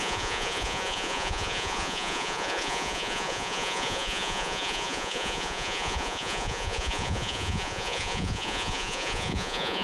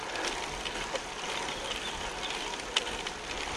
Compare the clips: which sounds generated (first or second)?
first